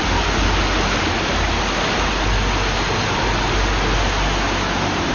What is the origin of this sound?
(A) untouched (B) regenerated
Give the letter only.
A